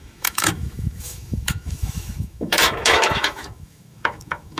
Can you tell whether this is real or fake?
fake